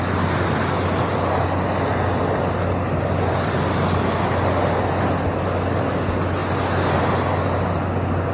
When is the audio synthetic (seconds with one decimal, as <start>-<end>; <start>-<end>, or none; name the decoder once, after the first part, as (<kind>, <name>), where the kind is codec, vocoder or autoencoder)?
none